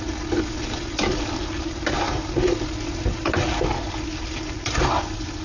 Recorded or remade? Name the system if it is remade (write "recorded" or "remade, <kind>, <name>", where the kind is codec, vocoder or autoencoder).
recorded